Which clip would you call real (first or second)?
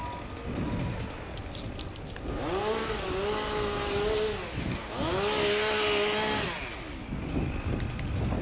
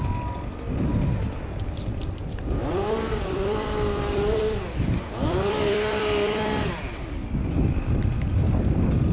first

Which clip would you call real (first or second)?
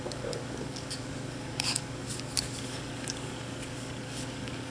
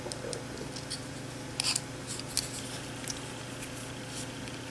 second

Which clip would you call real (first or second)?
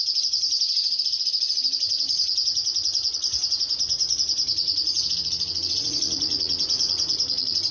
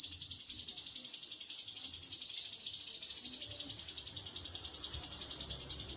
second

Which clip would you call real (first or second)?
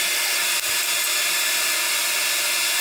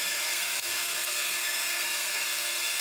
first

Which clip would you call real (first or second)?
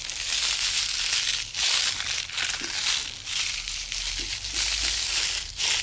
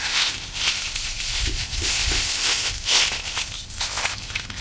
first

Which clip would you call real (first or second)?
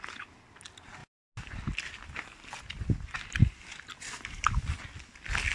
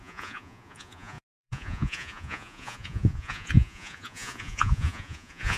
first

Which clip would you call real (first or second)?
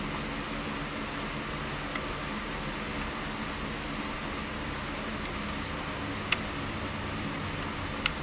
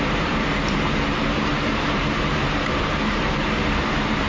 first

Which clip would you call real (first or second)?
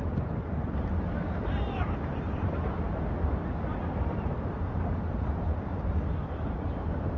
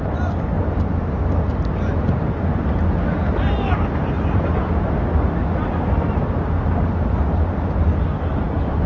second